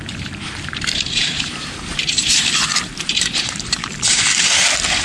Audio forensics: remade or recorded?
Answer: remade